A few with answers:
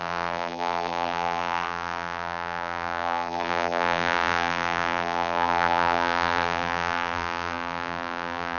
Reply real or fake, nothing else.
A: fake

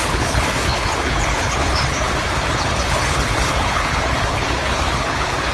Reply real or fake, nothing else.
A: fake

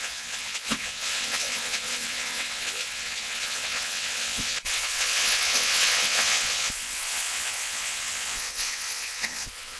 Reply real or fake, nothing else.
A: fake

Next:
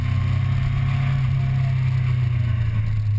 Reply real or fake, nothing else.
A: real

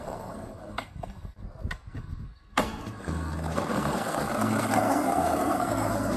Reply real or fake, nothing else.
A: fake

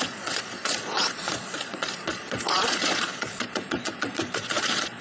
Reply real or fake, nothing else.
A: fake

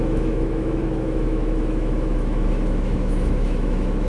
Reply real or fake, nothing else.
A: fake